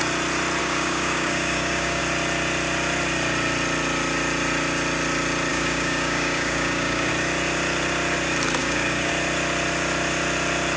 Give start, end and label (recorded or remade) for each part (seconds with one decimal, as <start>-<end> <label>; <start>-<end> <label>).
0.0-0.6 recorded; 0.6-2.0 remade; 2.0-5.5 recorded; 5.5-7.1 remade; 7.1-8.6 recorded; 8.6-9.1 remade; 9.1-10.8 recorded